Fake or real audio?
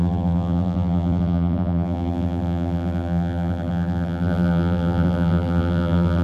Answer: fake